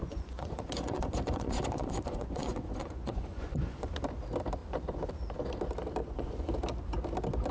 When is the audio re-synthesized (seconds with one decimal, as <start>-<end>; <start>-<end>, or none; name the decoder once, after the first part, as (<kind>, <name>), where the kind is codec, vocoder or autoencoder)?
0.0-3.9 (vocoder, Vocos); 6.0-6.5